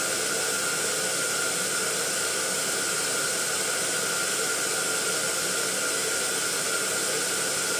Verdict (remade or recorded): recorded